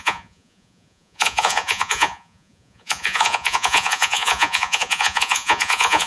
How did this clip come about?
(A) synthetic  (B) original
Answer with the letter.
A